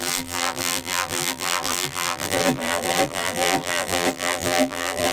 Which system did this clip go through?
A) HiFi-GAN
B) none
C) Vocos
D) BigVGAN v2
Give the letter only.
D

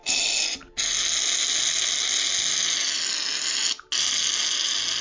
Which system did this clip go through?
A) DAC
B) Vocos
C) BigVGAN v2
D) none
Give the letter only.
D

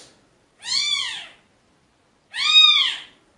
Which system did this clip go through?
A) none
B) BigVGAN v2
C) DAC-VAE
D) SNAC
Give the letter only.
A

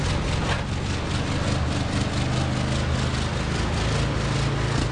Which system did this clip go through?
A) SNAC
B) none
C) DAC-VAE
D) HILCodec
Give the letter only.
B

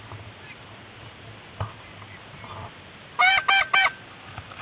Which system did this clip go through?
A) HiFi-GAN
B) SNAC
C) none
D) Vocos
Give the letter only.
C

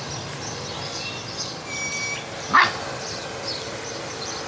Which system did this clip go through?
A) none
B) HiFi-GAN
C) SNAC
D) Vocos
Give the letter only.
A